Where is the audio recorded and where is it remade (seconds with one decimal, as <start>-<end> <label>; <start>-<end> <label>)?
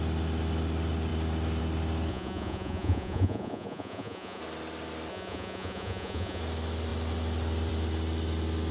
0.0-2.1 recorded; 2.1-4.4 remade; 4.4-5.1 recorded; 5.1-6.4 remade; 6.4-8.7 recorded